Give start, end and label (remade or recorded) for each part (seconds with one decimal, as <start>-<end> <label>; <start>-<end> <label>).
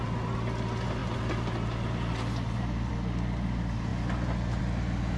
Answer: 0.0-5.2 recorded